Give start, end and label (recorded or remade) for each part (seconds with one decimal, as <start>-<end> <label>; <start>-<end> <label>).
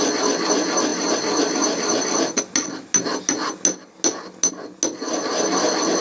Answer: 0.0-6.0 recorded